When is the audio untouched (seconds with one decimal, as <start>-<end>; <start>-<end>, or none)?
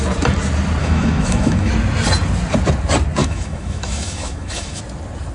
0.0-0.8; 1.7-3.2; 4.8-5.3